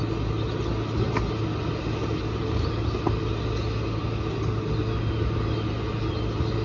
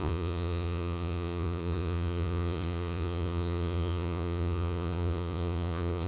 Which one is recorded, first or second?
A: first